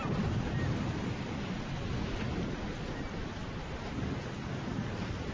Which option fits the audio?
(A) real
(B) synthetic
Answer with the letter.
A